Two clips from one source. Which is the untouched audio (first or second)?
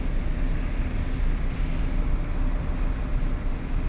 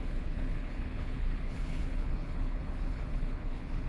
first